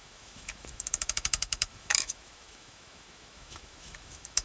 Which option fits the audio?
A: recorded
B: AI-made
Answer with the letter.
B